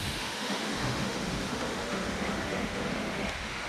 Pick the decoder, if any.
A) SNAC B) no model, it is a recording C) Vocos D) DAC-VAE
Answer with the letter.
D